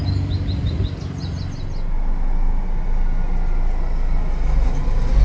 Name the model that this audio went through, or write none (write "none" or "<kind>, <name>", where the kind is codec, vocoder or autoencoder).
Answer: none